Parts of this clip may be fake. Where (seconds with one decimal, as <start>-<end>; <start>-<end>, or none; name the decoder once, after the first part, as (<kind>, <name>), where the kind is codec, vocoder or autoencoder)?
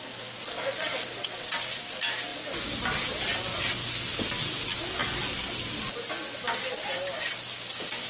1.2-1.8 (vocoder, WaveNeXt)